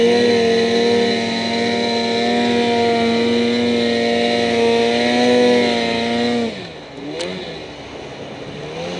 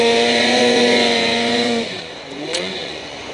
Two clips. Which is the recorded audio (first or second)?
first